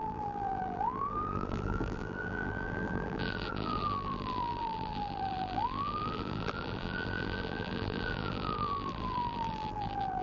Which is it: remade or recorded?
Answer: remade